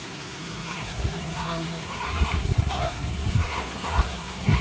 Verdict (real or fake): fake